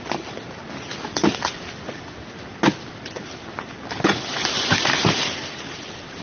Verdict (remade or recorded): recorded